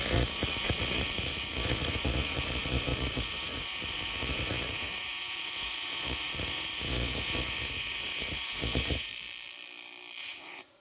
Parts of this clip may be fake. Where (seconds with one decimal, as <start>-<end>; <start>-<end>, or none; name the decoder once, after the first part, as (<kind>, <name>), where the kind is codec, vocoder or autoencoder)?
0.0-9.1 (vocoder, Vocos); 10.2-10.8